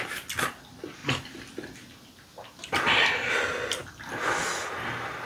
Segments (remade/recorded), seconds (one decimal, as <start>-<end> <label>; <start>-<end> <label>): 0.0-5.3 recorded